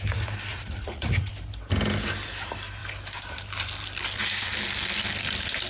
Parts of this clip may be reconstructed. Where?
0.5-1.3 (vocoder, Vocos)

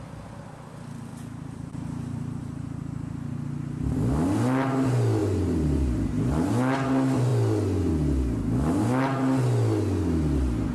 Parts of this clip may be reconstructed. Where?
1.1-2.4 (vocoder, BigVGAN v2); 5.2-6.5

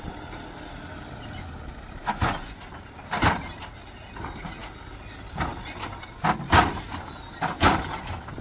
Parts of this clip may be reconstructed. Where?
2.0-2.6 (vocoder, Vocos)

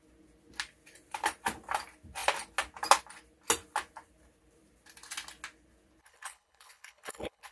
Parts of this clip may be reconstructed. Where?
6.0-7.5 (codec, HILCodec)

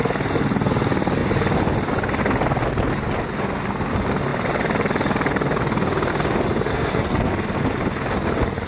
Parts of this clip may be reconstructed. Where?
6.7-7.3 (codec, SNAC)

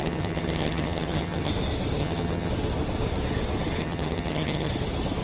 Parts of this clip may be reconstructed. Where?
0.0-1.5 (vocoder, HiFi-GAN); 2.0-2.5; 3.8-4.7

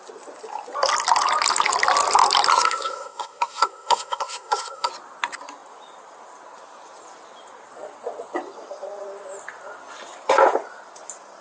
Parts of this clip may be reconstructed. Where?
2.5-4.9 (codec, SNAC)